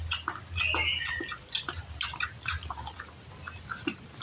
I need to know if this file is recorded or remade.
recorded